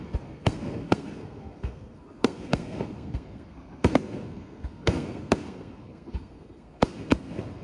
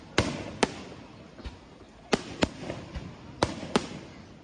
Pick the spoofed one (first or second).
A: first